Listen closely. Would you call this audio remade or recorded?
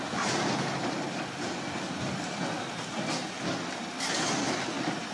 recorded